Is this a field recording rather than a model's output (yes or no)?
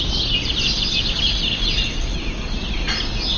yes